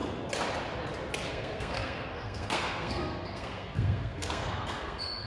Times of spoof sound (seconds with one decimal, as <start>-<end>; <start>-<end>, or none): 1.3-5.3